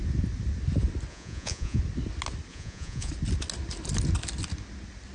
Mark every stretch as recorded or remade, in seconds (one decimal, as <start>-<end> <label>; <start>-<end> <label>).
0.0-1.1 recorded; 1.1-1.8 remade; 1.8-2.5 recorded; 2.5-3.1 remade; 3.1-5.1 recorded

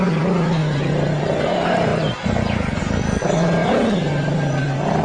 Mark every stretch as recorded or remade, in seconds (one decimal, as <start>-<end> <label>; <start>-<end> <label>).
0.0-5.0 recorded

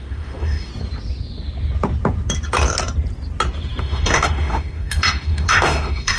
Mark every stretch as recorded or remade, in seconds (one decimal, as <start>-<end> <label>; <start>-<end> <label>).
0.0-0.7 remade; 0.7-3.8 recorded; 3.8-6.2 remade

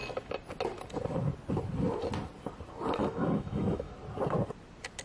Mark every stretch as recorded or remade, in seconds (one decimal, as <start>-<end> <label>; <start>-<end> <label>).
0.0-3.0 recorded; 3.0-3.9 remade; 3.9-5.0 recorded